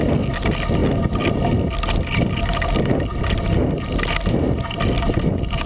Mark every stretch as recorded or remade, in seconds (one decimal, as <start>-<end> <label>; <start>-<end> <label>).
0.0-5.7 recorded